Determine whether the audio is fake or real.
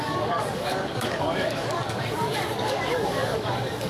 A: fake